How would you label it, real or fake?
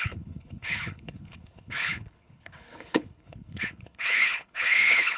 fake